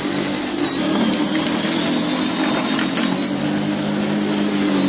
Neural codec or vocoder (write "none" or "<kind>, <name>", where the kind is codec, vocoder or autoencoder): none